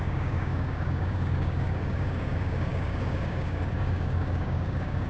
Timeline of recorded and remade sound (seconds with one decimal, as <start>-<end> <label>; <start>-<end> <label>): 0.0-5.1 remade